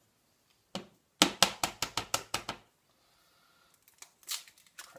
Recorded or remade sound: recorded